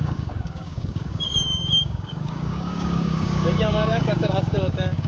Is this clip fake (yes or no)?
yes